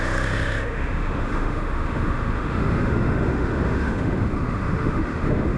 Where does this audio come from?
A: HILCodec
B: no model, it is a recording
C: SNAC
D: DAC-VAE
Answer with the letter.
D